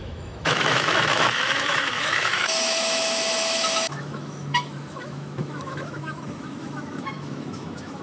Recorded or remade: remade